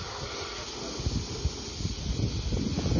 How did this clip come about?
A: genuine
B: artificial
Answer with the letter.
A